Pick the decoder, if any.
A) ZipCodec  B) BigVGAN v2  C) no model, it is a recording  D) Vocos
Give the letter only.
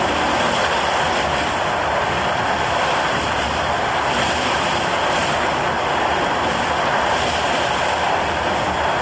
B